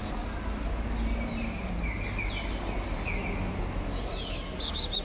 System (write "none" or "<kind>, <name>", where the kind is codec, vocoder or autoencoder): none